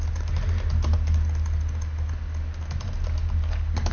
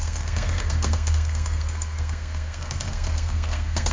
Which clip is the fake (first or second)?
second